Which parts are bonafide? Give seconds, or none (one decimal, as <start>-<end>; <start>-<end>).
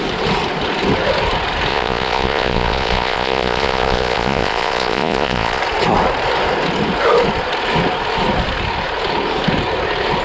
0.0-1.7; 5.6-10.2